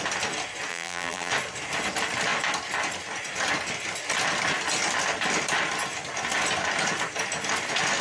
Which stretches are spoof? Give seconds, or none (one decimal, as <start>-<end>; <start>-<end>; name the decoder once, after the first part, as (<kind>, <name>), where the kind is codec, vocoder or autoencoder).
0.7-1.3 (vocoder, BigVGAN v2)